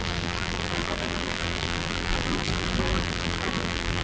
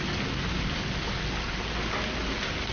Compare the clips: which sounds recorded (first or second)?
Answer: second